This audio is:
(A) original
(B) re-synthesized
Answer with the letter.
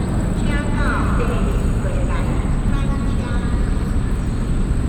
A